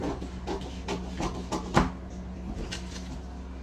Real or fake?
real